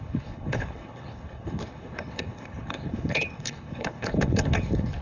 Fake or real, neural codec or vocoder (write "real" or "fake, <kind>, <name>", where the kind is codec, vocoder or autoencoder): fake, codec, HILCodec